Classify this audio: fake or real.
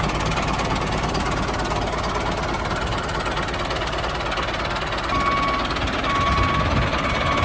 real